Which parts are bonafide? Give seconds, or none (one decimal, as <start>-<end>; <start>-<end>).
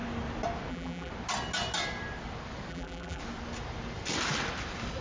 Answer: 0.0-0.7; 1.1-2.7; 3.2-5.0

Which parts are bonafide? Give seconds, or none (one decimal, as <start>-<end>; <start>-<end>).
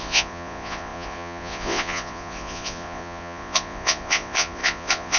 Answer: none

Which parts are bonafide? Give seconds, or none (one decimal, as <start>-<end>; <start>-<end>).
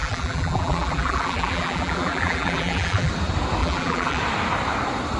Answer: 3.1-3.6; 4.2-5.2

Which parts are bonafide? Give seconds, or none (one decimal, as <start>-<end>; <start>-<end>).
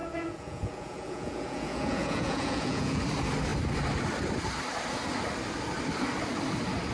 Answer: 3.0-6.9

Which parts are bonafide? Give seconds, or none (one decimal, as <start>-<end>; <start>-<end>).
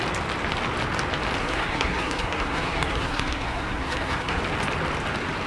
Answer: 0.0-1.4; 4.4-5.5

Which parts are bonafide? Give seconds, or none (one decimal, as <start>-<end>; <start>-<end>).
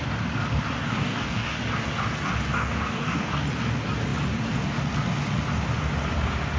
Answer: 0.0-0.8; 1.6-2.5; 3.4-6.6